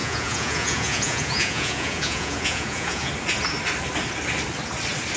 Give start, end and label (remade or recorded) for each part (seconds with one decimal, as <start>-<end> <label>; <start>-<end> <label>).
0.0-3.1 remade; 3.1-5.2 recorded